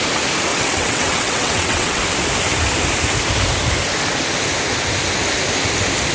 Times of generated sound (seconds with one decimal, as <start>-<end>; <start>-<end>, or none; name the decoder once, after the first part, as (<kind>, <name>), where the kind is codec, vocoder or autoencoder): 0.5-2.0 (vocoder, WaveNeXt)